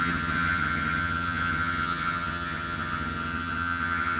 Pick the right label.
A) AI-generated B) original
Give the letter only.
A